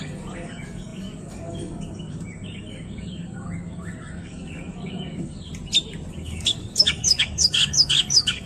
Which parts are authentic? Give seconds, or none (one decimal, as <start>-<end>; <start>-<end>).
5.5-6.1